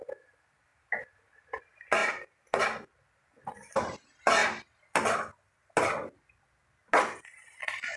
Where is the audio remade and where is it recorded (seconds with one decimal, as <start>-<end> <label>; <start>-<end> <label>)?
0.0-8.0 recorded